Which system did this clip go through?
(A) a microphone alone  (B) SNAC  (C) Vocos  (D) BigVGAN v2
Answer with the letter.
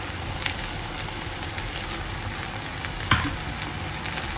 A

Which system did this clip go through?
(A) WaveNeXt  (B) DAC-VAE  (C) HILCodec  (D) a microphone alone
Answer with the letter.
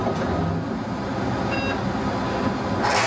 D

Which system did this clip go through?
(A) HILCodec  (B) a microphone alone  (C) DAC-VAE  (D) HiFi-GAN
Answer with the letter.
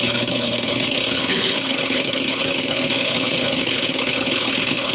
A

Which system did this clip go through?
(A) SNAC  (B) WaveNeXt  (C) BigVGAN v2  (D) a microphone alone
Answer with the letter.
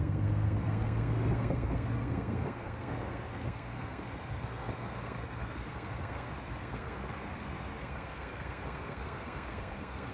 A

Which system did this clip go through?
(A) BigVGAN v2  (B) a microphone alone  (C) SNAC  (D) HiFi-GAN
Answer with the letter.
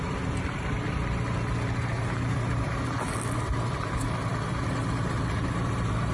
B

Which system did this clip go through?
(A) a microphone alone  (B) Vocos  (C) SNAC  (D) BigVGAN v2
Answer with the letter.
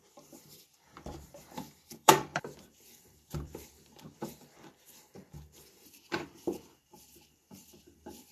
D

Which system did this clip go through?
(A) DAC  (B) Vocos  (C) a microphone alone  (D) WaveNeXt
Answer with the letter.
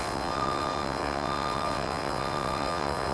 D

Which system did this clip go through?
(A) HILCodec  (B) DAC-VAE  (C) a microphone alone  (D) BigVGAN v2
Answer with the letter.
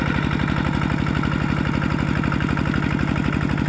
C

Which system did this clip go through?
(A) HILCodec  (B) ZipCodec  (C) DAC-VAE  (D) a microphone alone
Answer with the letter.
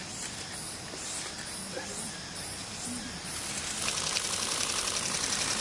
D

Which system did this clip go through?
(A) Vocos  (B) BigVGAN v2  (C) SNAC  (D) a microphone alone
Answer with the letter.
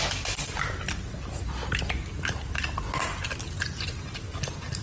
D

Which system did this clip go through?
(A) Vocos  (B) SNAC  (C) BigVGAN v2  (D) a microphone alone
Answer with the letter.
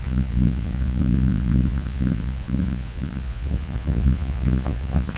A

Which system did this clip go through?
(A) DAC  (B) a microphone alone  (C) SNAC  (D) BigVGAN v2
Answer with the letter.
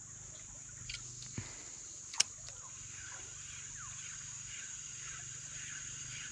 B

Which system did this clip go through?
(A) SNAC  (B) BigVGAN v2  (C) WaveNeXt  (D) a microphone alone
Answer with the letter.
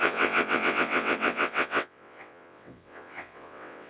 C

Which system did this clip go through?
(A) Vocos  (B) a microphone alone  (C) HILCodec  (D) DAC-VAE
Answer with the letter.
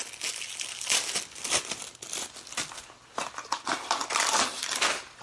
B